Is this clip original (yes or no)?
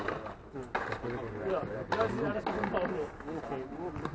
yes